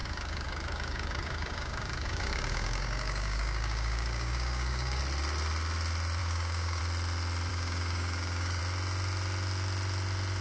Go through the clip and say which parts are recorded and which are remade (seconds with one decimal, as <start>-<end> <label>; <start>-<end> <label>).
0.0-5.0 remade; 5.0-6.2 recorded; 6.2-6.8 remade; 6.8-7.5 recorded; 7.5-8.6 remade; 8.6-10.4 recorded